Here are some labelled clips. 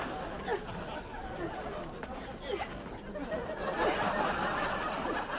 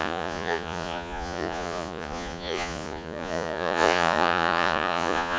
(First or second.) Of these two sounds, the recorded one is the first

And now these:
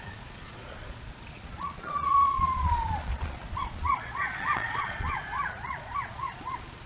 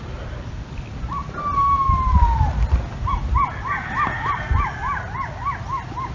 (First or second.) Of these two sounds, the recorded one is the second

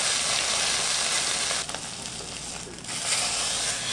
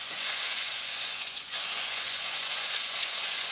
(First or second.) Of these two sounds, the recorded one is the first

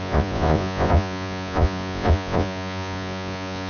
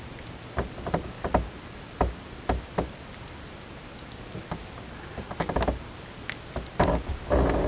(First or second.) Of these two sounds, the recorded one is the second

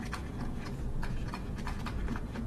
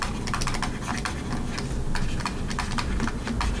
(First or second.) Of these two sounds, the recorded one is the second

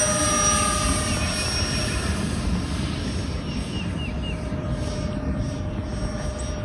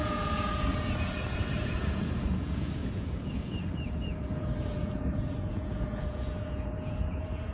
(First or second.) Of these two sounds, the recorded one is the first